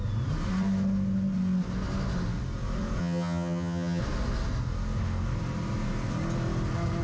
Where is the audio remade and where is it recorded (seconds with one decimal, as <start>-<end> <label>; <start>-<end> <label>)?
0.0-3.0 recorded; 3.0-4.0 remade; 4.0-7.0 recorded